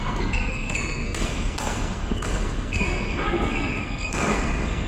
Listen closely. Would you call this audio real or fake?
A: fake